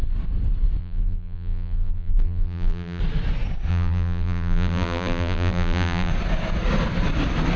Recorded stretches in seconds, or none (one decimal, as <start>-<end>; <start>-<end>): 0.0-0.8; 3.0-3.7; 6.1-7.6